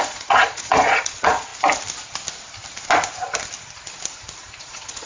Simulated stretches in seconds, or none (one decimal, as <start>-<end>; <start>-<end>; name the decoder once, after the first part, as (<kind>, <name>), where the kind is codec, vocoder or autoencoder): 0.0-1.5 (vocoder, Vocos); 4.6-5.1